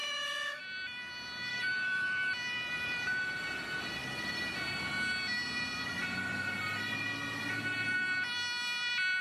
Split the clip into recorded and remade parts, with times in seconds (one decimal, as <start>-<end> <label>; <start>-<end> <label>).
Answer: 0.0-0.6 remade; 0.6-1.5 recorded; 1.5-2.3 remade; 2.3-9.2 recorded

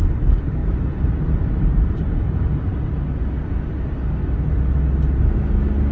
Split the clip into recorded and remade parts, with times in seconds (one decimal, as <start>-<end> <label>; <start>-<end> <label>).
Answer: 0.0-0.6 recorded; 0.6-2.2 remade; 2.2-5.9 recorded

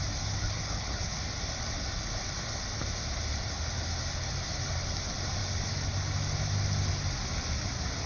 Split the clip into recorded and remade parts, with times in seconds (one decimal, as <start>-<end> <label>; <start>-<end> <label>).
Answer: 0.0-0.4 recorded; 0.4-1.2 remade; 1.2-8.1 recorded

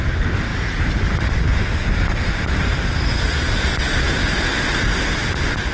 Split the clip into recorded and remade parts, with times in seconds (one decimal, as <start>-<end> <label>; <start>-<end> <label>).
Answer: 0.0-5.7 recorded

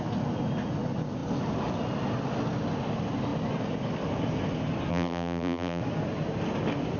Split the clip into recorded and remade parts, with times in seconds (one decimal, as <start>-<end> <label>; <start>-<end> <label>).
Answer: 0.0-4.9 recorded; 4.9-5.8 remade; 5.8-7.0 recorded